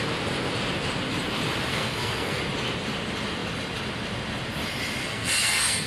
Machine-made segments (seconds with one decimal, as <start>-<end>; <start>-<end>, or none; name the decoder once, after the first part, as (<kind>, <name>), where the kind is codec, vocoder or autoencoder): 1.7-2.4 (codec, SNAC); 5.0-5.9